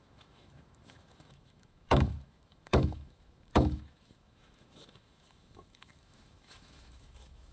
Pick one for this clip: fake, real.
fake